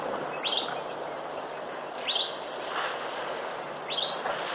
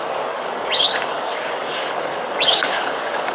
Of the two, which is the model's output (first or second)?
second